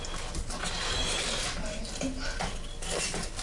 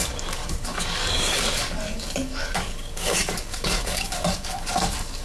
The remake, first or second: second